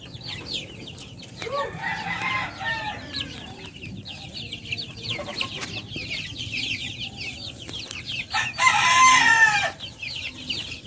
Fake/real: fake